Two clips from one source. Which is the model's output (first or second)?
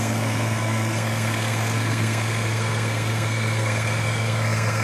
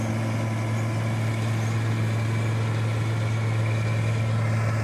first